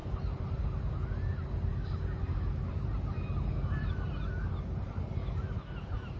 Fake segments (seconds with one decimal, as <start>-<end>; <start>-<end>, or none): none